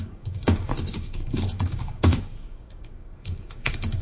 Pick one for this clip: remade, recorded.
remade